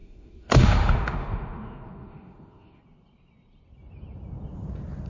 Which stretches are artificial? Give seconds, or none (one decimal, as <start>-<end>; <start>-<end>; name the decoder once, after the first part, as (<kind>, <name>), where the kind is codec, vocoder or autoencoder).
0.0-2.8 (autoencoder, DAC-VAE)